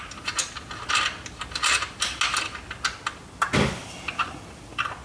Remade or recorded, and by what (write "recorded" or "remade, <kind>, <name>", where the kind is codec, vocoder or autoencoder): recorded